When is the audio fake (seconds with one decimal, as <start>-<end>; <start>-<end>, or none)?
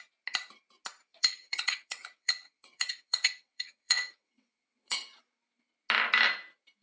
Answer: 1.1-5.2